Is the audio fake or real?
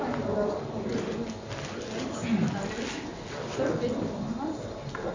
real